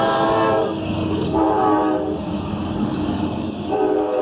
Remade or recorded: remade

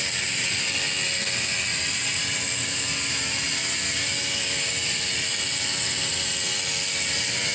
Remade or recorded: remade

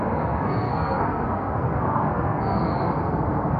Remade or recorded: remade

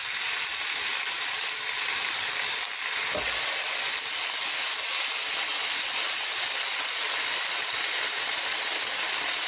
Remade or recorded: recorded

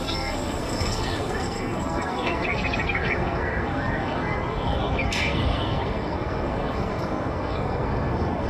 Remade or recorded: remade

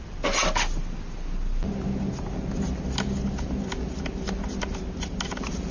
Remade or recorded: recorded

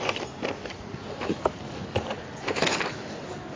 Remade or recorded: recorded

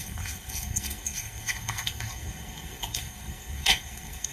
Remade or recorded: remade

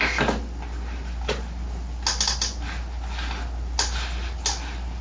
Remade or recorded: recorded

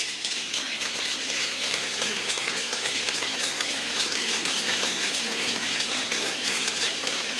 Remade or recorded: remade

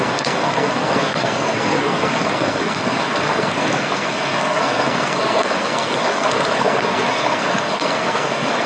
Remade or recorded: remade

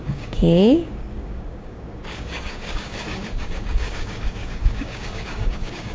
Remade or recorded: remade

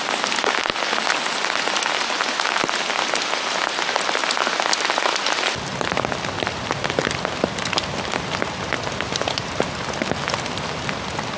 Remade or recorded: recorded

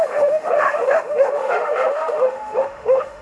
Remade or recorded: remade